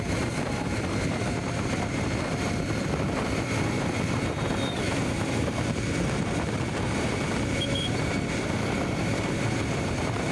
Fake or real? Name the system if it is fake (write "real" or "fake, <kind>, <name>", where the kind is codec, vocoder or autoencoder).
fake, vocoder, BigVGAN v2